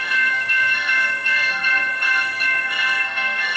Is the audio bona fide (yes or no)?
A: no